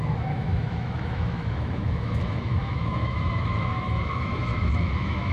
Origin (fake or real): fake